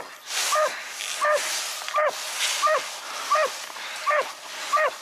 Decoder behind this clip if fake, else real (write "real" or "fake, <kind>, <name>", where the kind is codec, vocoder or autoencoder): real